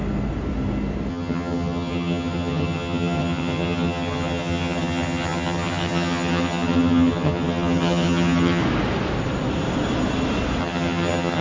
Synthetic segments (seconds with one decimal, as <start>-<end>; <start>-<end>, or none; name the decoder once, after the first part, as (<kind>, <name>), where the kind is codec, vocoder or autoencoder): 1.1-8.6 (vocoder, HiFi-GAN); 10.6-11.4